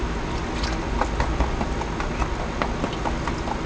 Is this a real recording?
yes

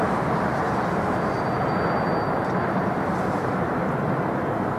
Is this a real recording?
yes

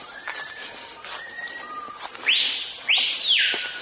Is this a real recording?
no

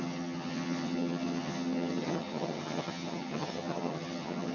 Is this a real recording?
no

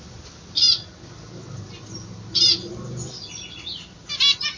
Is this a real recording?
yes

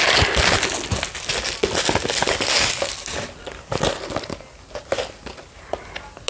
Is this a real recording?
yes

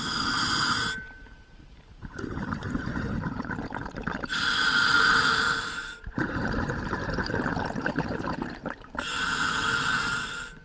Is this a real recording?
no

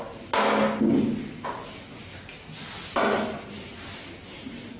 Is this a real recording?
yes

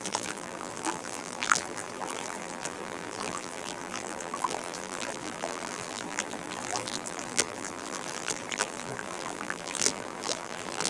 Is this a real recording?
no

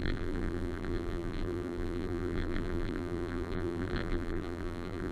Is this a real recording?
no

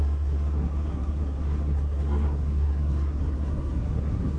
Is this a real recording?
no